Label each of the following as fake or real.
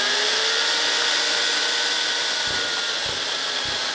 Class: real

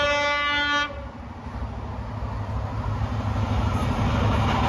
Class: real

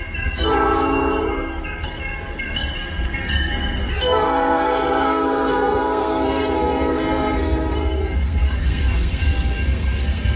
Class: fake